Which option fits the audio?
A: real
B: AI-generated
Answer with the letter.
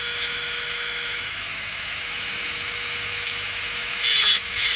B